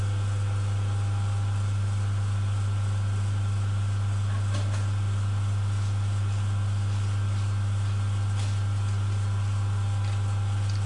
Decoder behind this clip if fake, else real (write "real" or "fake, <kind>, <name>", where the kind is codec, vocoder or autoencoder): real